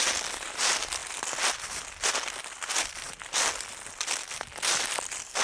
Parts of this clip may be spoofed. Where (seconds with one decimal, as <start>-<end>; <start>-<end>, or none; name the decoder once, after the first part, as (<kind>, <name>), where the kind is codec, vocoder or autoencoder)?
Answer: none